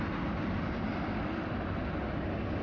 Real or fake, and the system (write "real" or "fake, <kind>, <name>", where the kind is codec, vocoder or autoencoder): real